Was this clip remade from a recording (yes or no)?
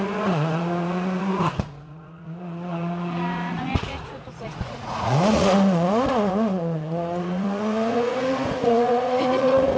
yes